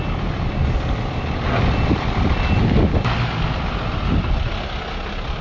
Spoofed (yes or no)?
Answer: no